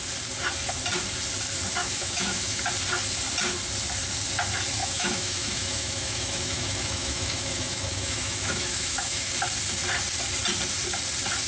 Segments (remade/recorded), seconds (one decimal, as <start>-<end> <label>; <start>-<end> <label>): 0.0-1.8 recorded; 1.8-2.6 remade; 2.6-4.8 recorded; 4.8-9.3 remade; 9.3-11.5 recorded